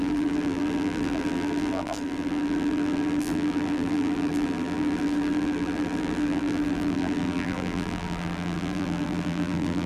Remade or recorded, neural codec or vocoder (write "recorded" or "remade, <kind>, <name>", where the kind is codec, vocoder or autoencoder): remade, vocoder, BigVGAN v2